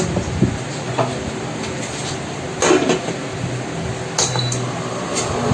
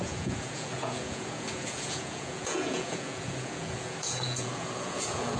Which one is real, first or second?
first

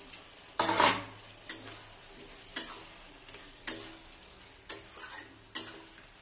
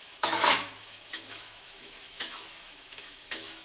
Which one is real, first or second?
first